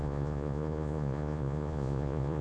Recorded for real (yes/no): no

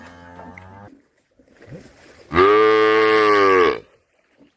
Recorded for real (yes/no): yes